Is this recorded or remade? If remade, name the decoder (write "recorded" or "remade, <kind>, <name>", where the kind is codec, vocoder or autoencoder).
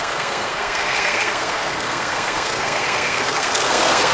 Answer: remade, codec, SNAC